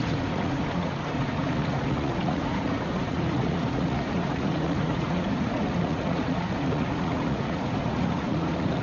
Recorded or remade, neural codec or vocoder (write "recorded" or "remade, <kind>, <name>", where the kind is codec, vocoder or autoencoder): remade, vocoder, Vocos